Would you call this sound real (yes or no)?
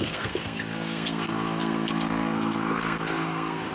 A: no